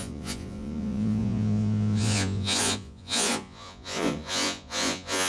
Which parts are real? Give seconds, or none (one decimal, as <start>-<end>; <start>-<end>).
none